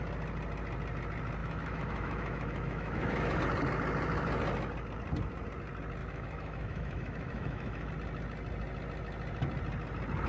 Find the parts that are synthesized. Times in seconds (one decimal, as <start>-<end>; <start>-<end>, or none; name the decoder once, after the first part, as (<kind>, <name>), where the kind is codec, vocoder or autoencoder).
1.4-3.4 (autoencoder, DAC-VAE); 6.0-7.9